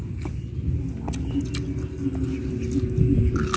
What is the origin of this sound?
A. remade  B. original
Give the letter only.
B